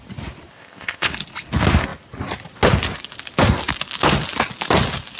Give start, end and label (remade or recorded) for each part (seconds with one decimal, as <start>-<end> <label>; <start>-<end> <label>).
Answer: 0.0-0.5 recorded; 0.5-1.1 remade; 1.1-5.2 recorded